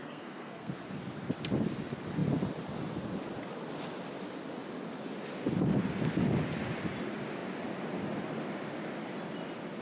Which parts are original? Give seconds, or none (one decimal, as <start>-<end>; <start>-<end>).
0.7-9.8